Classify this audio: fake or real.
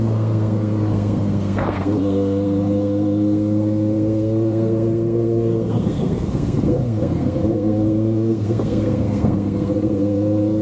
fake